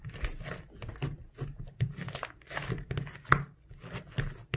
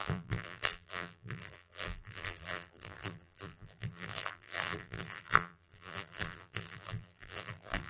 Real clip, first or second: first